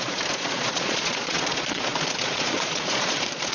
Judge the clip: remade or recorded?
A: remade